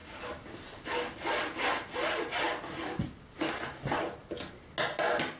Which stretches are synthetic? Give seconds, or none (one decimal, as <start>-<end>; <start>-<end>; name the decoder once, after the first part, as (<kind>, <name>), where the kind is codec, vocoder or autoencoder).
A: none